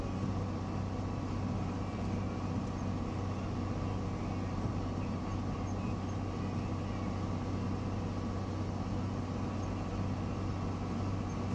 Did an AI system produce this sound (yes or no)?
no